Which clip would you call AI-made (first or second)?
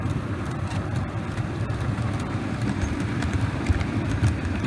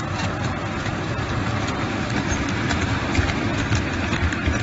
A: first